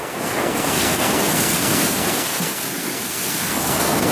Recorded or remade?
remade